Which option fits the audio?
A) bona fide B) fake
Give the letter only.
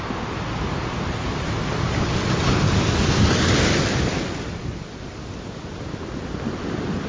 A